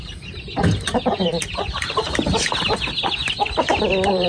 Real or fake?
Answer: fake